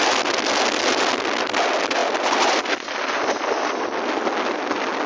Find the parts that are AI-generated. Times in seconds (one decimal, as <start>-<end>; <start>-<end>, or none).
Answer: none